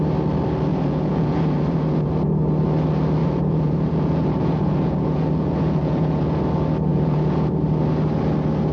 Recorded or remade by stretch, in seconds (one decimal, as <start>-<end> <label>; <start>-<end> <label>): 0.0-0.7 recorded; 0.7-2.1 remade; 2.1-3.2 recorded; 3.2-6.4 remade; 6.4-6.9 recorded; 6.9-7.5 remade; 7.5-8.7 recorded